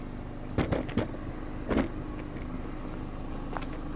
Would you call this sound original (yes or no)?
yes